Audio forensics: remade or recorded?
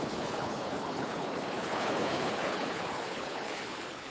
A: remade